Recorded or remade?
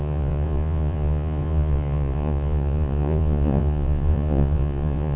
remade